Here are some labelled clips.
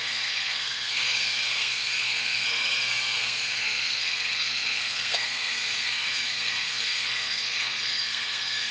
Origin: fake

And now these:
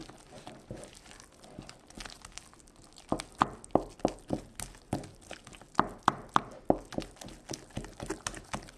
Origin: real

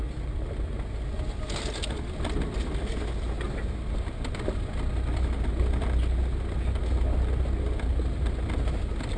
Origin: real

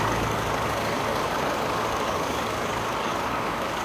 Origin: fake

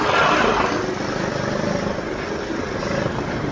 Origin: real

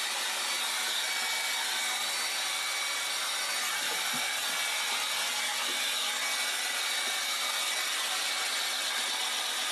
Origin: real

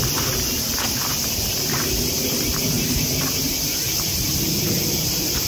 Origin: real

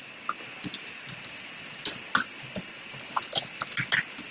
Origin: real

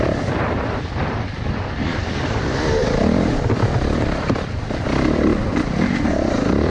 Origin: fake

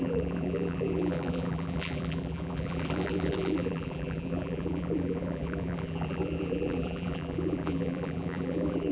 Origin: fake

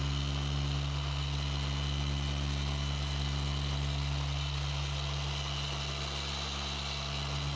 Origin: real